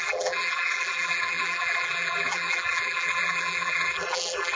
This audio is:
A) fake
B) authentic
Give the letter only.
A